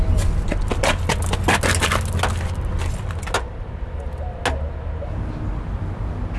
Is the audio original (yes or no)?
yes